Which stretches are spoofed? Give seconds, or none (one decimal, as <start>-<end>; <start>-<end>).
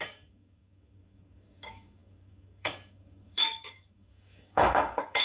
0.0-5.2